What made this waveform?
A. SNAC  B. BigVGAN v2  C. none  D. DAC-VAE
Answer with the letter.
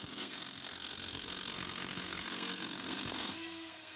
A